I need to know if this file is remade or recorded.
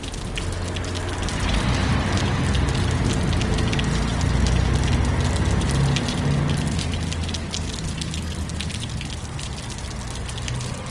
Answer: recorded